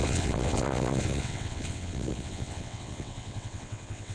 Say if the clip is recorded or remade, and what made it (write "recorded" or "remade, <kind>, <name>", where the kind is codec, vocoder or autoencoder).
remade, vocoder, WaveNeXt